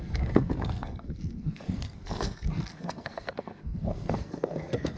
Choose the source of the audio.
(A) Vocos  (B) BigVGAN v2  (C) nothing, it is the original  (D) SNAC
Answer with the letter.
D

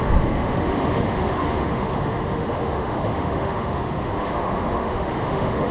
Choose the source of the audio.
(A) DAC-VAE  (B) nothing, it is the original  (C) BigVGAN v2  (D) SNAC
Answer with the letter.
A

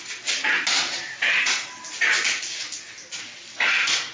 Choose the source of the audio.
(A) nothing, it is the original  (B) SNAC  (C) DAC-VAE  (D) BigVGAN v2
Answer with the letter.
A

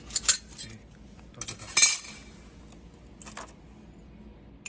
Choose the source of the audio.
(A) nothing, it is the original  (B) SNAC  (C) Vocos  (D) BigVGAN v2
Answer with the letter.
A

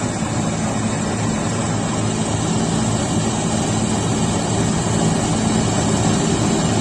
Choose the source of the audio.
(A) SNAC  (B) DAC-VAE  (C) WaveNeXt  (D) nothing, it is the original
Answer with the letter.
D